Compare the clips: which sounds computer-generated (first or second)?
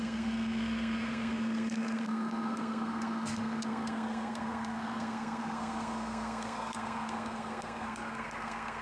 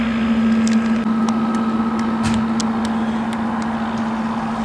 first